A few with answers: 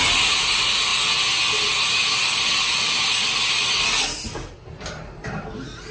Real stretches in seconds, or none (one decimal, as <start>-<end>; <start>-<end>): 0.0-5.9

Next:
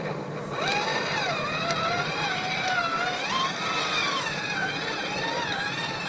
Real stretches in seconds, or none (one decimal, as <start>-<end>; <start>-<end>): 0.0-0.9; 3.2-4.0; 5.3-6.1

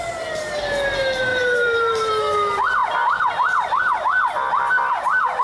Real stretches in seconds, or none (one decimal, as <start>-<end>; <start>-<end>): 0.0-1.3; 2.1-5.4